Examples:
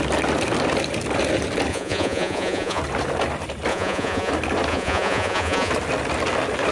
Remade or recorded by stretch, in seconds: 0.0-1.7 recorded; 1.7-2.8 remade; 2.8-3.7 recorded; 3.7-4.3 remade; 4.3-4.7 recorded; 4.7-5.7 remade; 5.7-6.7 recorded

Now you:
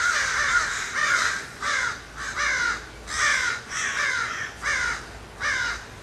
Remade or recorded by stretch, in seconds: 0.0-1.0 recorded; 1.0-2.0 remade; 2.0-3.3 recorded; 3.3-4.6 remade; 4.6-6.0 recorded

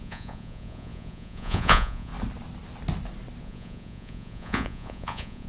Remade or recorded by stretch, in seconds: 0.0-2.1 remade; 2.1-3.4 recorded; 3.4-5.5 remade